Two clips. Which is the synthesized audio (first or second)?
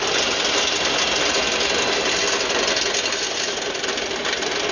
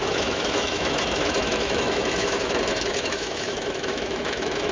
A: second